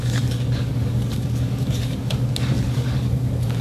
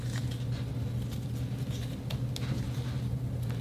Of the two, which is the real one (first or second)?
second